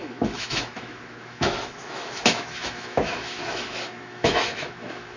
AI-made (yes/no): yes